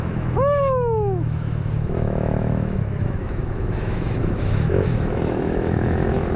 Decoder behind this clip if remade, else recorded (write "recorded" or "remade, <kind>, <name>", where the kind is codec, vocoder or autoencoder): remade, autoencoder, DAC-VAE